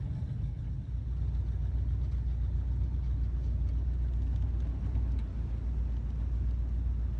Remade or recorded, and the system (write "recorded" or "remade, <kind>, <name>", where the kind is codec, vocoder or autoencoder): recorded